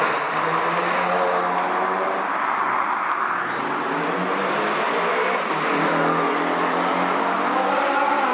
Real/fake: real